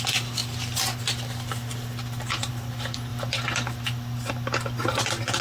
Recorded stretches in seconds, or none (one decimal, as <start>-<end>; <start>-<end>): 0.0-5.4